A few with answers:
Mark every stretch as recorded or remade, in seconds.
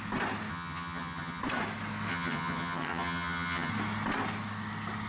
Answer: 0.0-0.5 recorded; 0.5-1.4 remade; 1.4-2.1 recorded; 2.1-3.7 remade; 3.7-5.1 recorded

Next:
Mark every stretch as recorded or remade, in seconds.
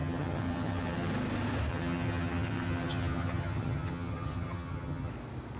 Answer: 0.0-1.1 remade; 1.1-1.7 recorded; 1.7-5.1 remade; 5.1-5.6 recorded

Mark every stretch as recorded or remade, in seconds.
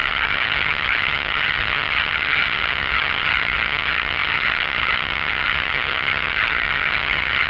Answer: 0.0-7.5 remade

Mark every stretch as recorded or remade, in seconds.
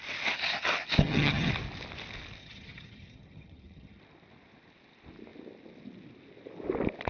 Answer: 0.0-1.0 recorded; 1.0-1.5 remade; 1.5-2.4 recorded; 2.4-4.0 remade; 4.0-7.1 recorded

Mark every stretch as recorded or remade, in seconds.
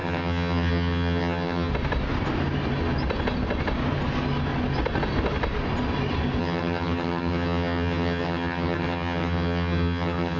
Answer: 0.0-1.7 remade; 1.7-6.4 recorded; 6.4-10.4 remade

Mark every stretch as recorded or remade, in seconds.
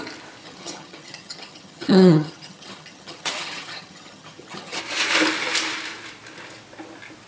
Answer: 0.0-0.4 recorded; 0.4-4.8 remade; 4.8-7.3 recorded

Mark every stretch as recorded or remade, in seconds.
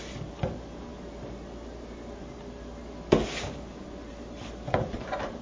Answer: 0.0-5.4 recorded